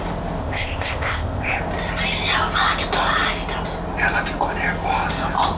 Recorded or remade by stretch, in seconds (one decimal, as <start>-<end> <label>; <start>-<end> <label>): 0.0-0.4 recorded; 0.4-1.6 remade; 1.6-5.6 recorded